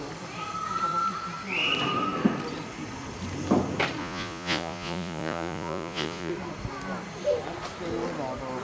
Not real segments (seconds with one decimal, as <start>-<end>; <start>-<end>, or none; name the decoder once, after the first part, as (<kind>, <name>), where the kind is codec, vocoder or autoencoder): 4.0-6.3 (vocoder, Vocos)